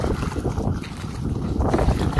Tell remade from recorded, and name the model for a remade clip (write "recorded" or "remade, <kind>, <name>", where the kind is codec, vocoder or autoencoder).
recorded